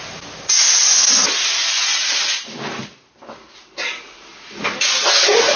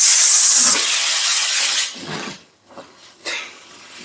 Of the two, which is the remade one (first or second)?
second